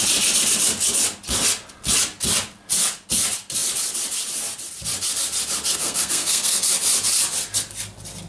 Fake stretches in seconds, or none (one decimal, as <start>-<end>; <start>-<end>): 5.7-6.7